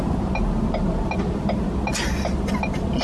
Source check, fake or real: real